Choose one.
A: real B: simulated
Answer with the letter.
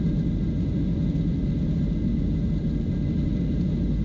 A